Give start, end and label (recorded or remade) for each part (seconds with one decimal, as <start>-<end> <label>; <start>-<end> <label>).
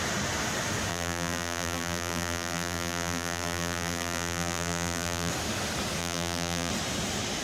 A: 0.0-0.9 recorded; 0.9-5.3 remade; 5.3-6.0 recorded; 6.0-6.7 remade; 6.7-7.4 recorded